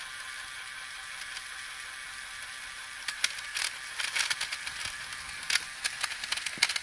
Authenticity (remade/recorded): recorded